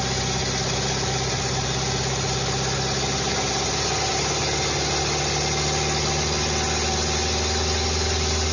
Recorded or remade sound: recorded